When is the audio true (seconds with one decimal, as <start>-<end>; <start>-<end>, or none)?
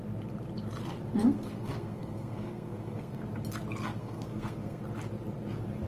0.0-1.2; 3.2-4.0; 4.8-5.9